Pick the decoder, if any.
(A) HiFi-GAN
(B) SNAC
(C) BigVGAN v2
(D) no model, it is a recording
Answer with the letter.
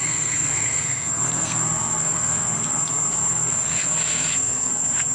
B